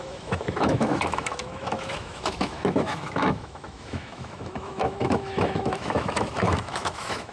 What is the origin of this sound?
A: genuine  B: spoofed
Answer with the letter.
B